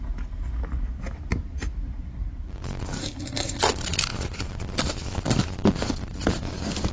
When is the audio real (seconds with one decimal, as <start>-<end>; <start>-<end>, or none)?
0.0-3.0; 3.6-6.9